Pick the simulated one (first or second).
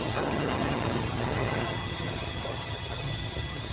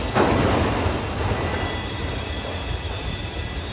first